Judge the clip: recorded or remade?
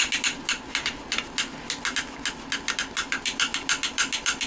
recorded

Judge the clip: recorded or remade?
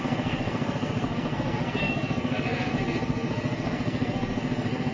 remade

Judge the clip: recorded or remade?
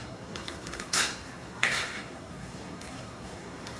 remade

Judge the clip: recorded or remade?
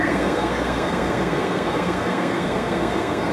remade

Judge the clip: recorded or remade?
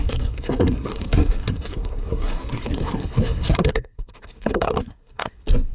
remade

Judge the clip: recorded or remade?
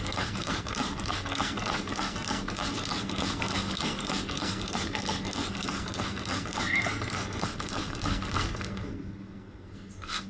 remade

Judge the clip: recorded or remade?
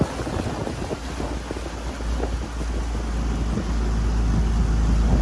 recorded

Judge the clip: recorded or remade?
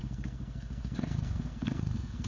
remade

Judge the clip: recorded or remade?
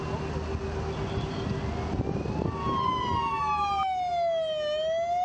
recorded